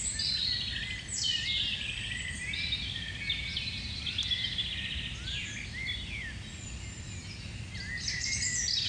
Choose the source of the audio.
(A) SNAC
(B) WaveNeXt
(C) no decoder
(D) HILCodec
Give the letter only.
C